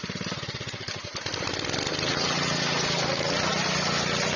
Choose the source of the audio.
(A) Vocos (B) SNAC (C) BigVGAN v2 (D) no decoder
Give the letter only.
D